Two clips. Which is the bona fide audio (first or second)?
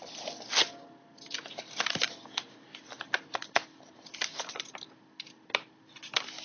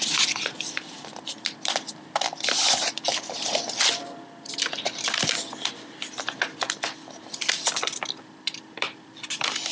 first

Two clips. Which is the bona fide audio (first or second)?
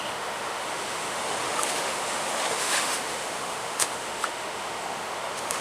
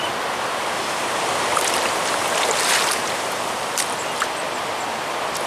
second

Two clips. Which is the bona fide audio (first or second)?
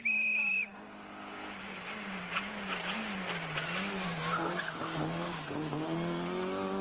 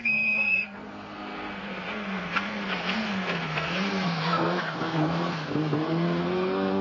first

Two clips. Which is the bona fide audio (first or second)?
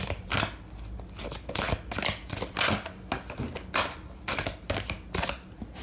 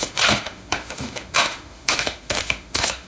first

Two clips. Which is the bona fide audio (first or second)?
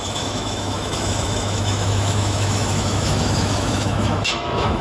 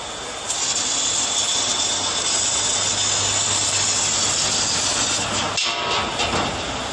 second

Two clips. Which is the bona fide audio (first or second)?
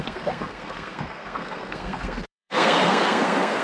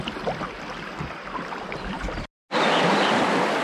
second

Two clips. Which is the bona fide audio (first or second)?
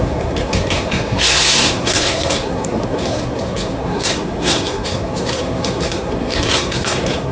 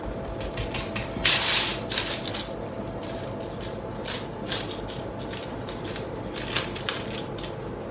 second